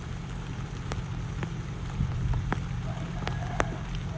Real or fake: real